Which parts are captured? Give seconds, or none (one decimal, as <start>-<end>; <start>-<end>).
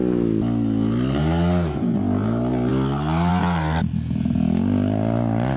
0.0-5.6